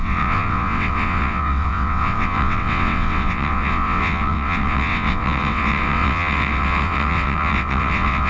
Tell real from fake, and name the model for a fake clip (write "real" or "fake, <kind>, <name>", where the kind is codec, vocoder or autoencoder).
fake, vocoder, WaveNeXt